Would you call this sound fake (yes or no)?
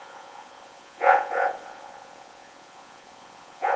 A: yes